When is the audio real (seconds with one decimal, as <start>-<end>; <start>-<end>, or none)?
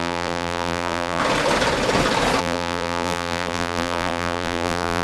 1.2-2.4